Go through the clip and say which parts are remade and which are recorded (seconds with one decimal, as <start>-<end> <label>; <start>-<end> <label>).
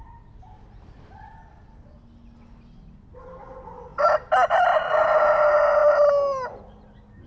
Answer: 0.0-7.3 recorded